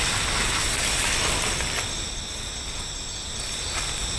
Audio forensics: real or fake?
real